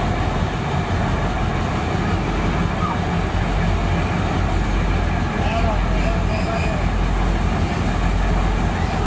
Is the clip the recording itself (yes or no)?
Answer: yes